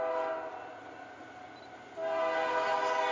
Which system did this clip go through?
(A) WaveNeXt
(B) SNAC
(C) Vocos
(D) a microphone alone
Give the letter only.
D